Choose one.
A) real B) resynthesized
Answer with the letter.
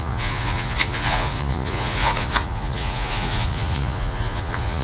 B